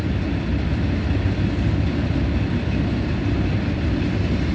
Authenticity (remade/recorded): recorded